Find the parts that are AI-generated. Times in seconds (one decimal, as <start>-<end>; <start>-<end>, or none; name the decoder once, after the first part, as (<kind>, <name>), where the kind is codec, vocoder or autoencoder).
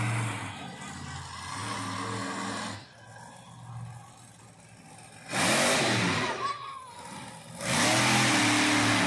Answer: none